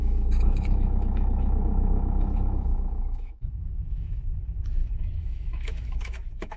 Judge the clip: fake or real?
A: fake